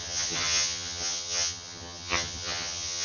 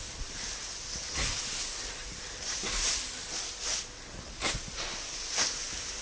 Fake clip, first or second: first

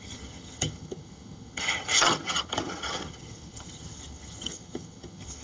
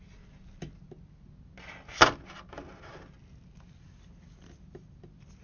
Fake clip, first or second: first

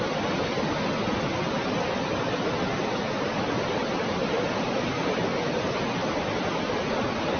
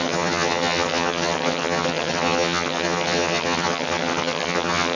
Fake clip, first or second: second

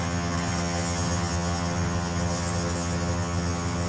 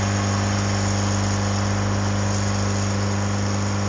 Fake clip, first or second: first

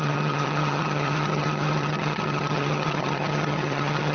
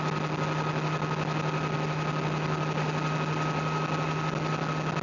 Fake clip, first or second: first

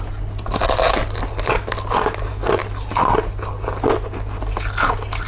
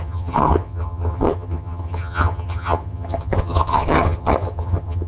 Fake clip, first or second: second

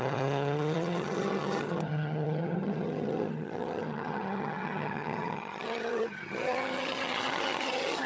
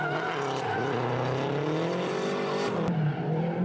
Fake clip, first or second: first